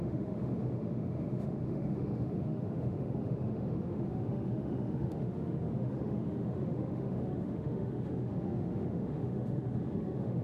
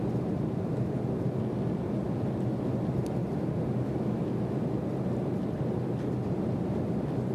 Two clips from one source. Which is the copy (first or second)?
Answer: first